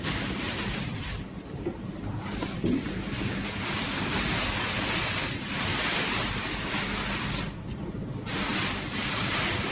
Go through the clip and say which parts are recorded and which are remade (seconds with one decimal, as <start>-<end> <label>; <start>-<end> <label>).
0.0-5.7 remade; 5.7-9.1 recorded; 9.1-9.7 remade